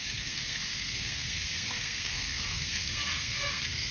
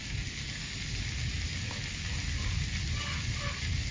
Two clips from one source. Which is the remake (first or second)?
first